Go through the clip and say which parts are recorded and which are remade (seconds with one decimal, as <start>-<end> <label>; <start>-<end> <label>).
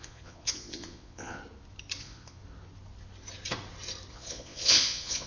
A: 0.0-1.4 remade; 1.4-2.0 recorded; 2.0-2.4 remade; 2.4-4.1 recorded; 4.1-5.3 remade